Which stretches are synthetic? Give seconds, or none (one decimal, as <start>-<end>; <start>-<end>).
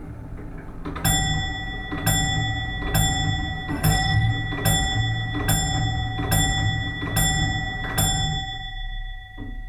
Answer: 3.7-4.3